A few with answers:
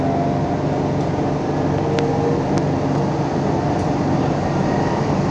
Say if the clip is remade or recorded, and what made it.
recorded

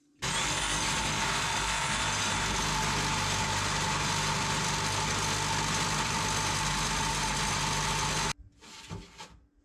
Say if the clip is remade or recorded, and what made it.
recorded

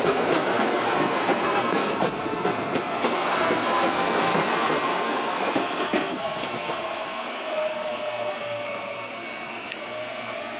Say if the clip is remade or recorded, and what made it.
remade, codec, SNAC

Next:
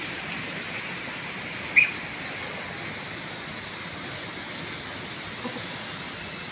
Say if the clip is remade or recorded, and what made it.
recorded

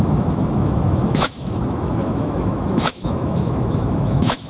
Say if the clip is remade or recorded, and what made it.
remade, autoencoder, DAC-VAE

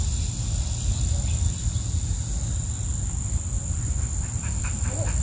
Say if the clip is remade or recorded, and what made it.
recorded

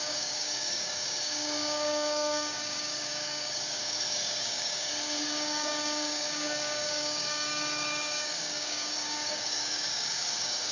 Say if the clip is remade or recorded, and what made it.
remade, codec, DAC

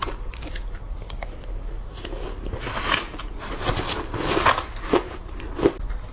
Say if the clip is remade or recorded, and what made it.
recorded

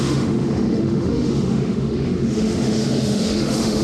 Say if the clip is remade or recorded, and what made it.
remade, autoencoder, DAC-VAE